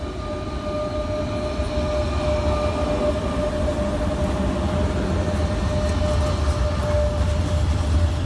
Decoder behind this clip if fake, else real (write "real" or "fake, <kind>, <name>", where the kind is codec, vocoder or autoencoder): real